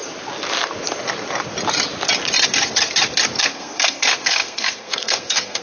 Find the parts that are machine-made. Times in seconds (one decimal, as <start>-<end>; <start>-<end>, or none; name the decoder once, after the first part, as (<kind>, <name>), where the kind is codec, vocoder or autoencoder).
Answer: 3.4-5.6 (codec, SNAC)